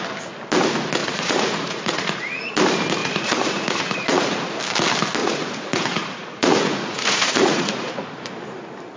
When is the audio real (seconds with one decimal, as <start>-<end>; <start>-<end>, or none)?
0.0-1.0; 2.5-3.0; 4.6-5.2; 7.9-9.0